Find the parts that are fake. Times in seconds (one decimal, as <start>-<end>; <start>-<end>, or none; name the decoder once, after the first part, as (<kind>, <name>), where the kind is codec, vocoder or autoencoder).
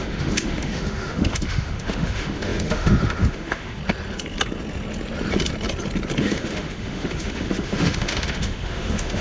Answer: 0.0-3.8 (autoencoder, DAC-VAE); 6.2-9.2